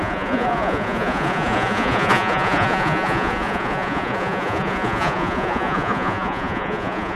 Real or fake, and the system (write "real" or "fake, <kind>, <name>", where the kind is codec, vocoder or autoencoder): fake, vocoder, Vocos